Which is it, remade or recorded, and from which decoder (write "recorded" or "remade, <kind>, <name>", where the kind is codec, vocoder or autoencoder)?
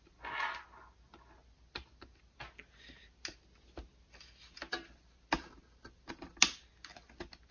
recorded